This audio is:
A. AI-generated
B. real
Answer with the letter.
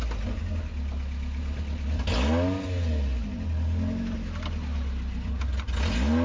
B